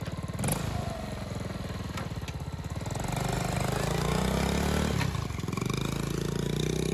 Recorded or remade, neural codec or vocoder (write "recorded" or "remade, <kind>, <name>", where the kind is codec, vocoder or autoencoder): recorded